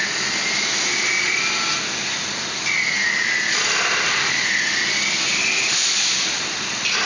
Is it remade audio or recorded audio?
recorded